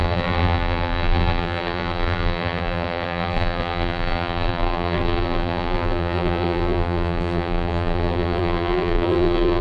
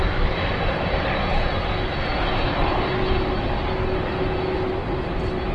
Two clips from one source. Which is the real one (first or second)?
second